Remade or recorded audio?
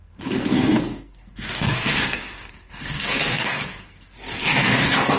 remade